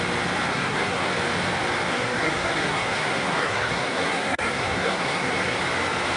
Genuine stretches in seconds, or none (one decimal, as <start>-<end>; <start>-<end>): 0.0-0.5; 1.1-1.9; 5.6-6.2